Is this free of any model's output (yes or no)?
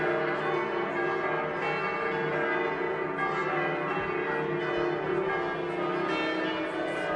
yes